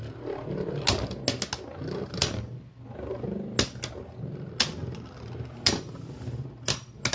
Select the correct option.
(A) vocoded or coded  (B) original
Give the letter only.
B